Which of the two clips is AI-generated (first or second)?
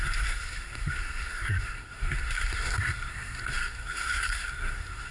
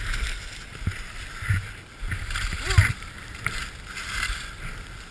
first